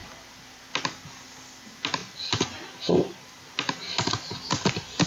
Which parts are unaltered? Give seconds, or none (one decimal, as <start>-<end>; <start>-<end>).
0.0-5.1